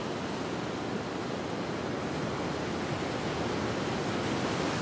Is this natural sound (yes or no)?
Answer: yes